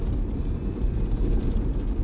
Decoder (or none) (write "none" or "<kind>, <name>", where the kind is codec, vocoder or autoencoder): none